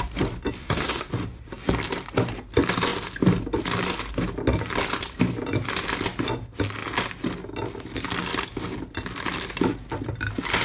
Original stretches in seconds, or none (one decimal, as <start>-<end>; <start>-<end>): 0.0-0.6; 1.1-10.6